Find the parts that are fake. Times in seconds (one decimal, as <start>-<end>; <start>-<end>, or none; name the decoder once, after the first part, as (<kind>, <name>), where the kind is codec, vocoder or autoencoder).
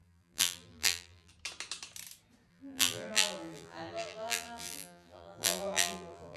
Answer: 0.0-1.3 (vocoder, BigVGAN v2); 2.5-6.4